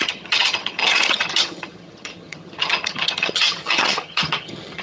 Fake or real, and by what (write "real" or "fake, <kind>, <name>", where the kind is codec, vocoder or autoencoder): fake, vocoder, HiFi-GAN